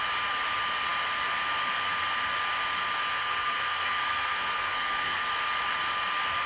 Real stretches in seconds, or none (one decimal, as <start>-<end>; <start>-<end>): 0.0-3.2; 5.3-6.5